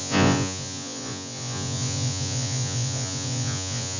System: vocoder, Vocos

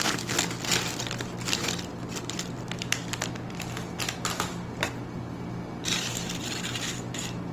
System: vocoder, BigVGAN v2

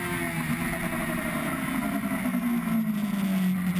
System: none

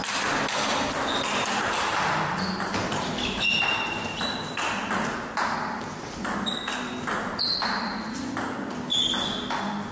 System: none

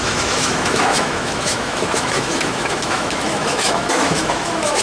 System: autoencoder, DAC-VAE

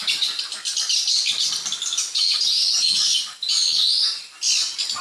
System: none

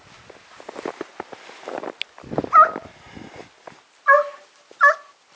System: none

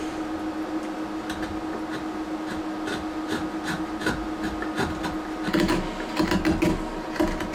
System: none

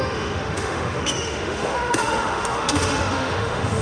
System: autoencoder, DAC-VAE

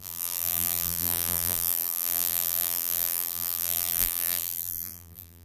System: vocoder, BigVGAN v2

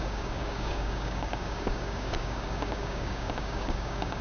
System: codec, DAC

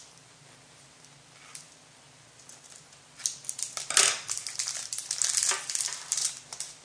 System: none